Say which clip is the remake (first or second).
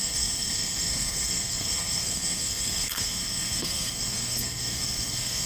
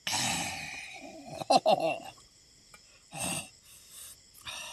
first